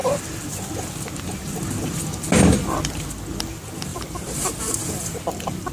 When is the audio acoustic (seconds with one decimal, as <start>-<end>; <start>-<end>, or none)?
0.0-3.9; 4.5-5.7

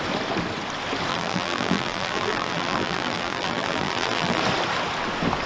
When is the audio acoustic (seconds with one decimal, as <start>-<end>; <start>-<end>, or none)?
0.0-1.1; 4.4-5.5

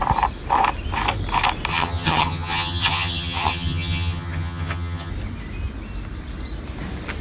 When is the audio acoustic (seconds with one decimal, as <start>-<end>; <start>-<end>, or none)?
0.0-1.7; 5.1-7.2

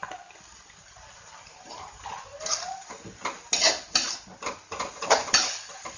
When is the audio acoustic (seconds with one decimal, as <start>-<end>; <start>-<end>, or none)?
0.0-6.0

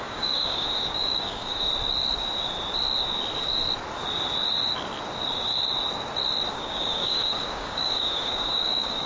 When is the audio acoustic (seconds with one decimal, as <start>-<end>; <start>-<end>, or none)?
1.7-6.5

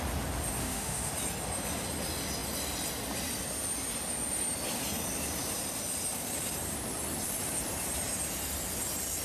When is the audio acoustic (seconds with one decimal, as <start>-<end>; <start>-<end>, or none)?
0.0-0.6; 1.1-9.2

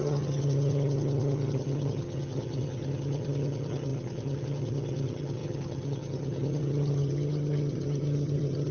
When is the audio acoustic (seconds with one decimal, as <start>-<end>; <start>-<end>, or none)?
none